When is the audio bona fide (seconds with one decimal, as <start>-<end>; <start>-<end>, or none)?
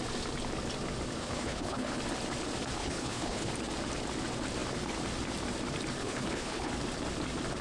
0.0-1.2; 2.0-2.8; 3.5-6.0; 6.7-7.6